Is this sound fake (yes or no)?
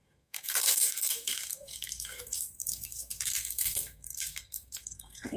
yes